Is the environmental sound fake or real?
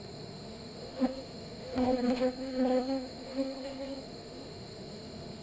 fake